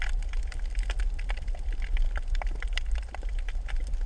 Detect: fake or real real